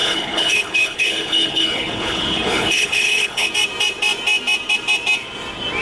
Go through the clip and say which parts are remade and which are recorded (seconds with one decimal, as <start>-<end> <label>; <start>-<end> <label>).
0.0-3.5 remade; 3.5-5.8 recorded